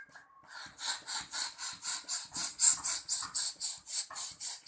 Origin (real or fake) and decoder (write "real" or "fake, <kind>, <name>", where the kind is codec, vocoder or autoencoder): real